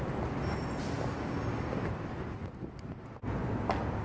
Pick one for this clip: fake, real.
real